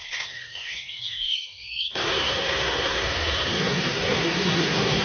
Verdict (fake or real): fake